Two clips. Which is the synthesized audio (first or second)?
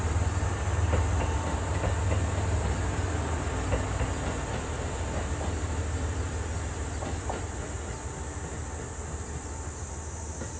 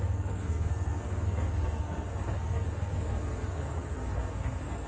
second